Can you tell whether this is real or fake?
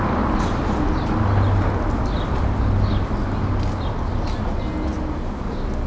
real